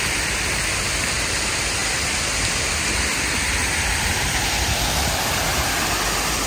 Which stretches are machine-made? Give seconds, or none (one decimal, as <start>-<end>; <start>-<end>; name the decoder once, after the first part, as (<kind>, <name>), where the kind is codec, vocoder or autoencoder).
none